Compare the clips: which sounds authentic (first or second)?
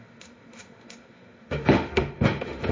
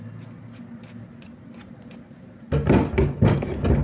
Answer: second